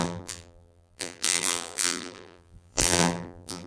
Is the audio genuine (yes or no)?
no